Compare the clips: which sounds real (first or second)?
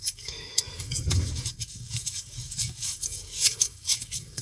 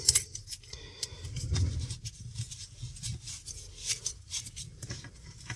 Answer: second